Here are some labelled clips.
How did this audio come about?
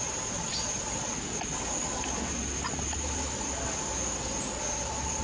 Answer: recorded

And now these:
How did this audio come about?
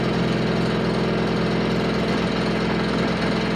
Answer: recorded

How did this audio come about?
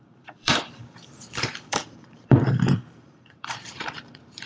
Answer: remade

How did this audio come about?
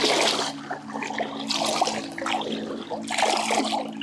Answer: recorded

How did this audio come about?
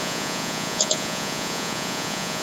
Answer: remade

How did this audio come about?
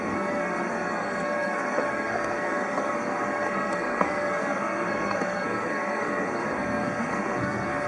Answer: remade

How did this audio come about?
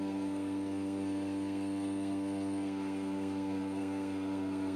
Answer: remade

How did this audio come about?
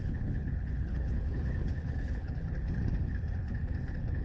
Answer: remade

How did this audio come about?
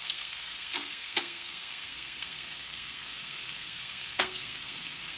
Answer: remade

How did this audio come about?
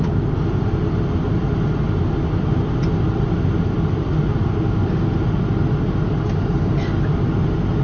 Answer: recorded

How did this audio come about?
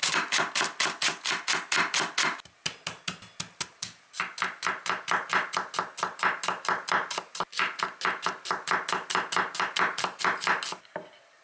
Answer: recorded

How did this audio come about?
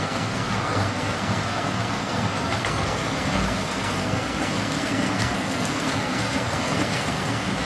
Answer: remade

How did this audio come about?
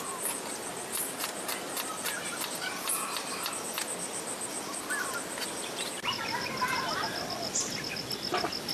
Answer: recorded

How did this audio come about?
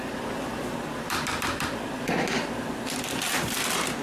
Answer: recorded